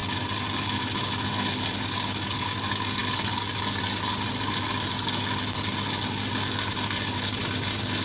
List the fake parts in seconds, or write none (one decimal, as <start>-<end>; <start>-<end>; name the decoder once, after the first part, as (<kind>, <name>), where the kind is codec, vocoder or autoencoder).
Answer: none